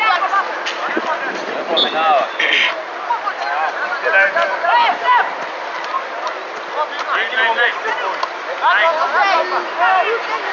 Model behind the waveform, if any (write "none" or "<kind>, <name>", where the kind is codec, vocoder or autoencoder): none